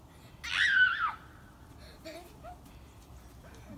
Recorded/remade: recorded